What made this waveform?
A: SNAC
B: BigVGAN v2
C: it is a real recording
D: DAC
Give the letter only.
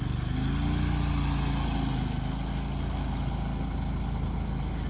C